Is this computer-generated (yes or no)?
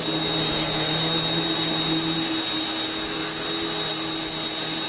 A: no